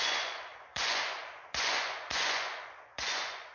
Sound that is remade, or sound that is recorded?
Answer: remade